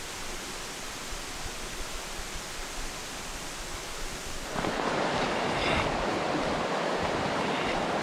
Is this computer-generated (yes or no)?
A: yes